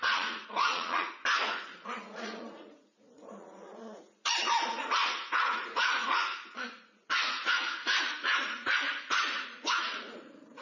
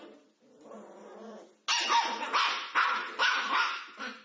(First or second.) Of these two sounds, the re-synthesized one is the first